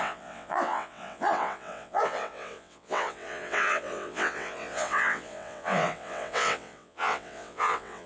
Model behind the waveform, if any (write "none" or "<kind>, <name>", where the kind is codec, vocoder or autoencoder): vocoder, WaveNeXt